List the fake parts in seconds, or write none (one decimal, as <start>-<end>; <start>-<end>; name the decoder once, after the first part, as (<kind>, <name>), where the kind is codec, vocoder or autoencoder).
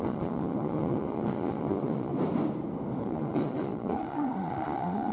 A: 0.0-2.1 (vocoder, Vocos); 3.0-5.1